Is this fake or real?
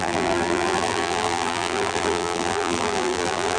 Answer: fake